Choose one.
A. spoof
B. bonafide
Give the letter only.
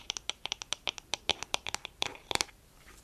A